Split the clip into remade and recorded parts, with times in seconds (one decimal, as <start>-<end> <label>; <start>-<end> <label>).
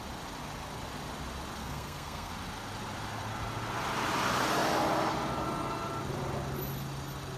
0.0-1.6 recorded; 1.6-2.3 remade; 2.3-7.4 recorded